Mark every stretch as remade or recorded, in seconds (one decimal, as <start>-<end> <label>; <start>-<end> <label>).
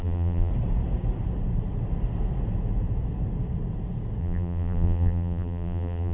0.0-0.5 remade; 0.5-4.2 recorded; 4.2-6.1 remade